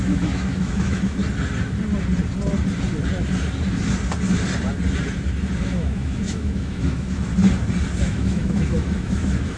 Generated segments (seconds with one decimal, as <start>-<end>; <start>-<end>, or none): 0.0-1.2; 5.6-7.3; 8.0-9.6